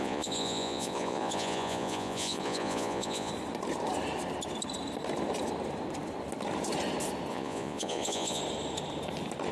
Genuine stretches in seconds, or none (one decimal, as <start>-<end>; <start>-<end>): 3.3-7.3; 8.4-9.5